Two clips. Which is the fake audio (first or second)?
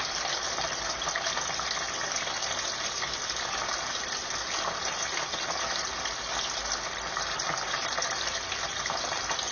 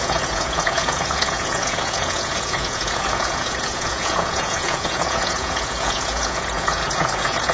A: second